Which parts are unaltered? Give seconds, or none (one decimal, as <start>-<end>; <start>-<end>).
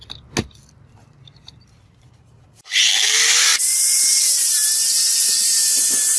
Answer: 0.0-1.0; 2.9-3.5; 5.2-6.2